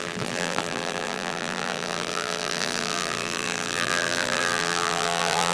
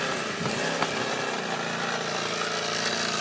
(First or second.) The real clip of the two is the second